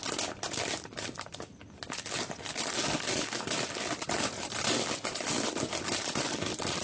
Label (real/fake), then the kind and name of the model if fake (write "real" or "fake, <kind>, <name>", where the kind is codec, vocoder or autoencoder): real